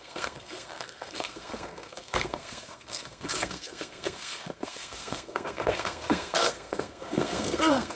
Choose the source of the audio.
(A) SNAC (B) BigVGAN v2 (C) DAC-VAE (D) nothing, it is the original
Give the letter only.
A